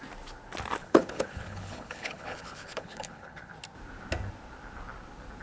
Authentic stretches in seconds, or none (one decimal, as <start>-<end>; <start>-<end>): 0.0-0.8; 3.5-5.4

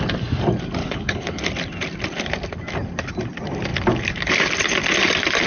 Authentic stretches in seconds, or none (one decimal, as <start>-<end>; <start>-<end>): 0.0-0.8; 1.4-5.5

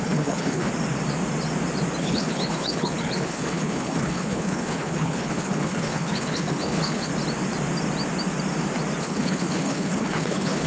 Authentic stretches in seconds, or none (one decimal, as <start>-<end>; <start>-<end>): 0.7-2.0; 7.1-9.0

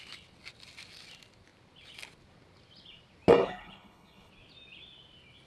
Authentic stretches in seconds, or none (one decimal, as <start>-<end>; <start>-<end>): 0.0-3.4; 4.3-5.5

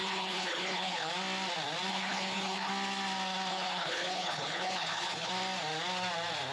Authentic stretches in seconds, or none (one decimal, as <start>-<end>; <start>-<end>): 1.1-1.9; 2.7-3.5; 5.3-6.5

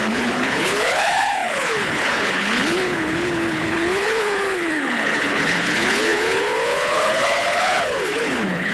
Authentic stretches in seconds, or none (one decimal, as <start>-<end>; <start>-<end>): none

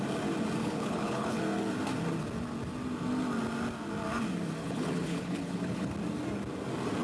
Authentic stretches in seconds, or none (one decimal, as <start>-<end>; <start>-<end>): 0.0-0.6; 1.4-4.6; 5.9-7.0

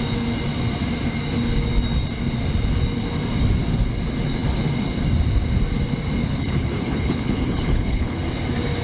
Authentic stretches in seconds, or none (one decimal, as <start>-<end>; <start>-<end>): 0.0-6.2; 8.2-8.8